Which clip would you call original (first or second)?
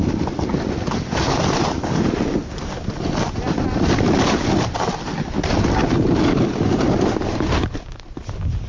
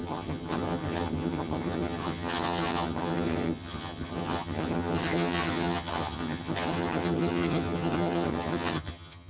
first